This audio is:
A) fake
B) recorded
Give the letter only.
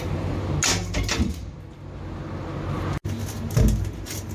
B